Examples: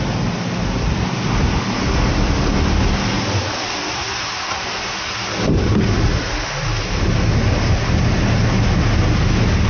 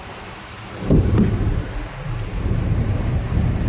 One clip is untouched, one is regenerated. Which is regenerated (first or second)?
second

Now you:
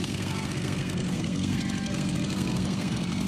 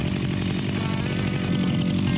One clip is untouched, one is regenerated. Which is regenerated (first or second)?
first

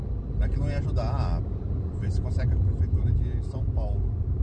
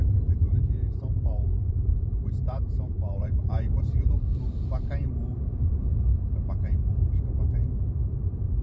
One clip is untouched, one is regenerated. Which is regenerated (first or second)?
second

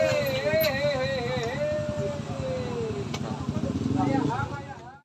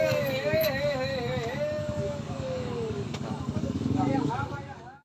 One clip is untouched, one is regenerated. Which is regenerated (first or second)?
second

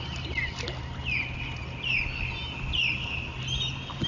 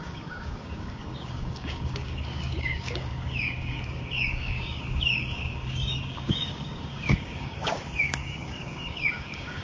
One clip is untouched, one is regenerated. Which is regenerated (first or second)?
second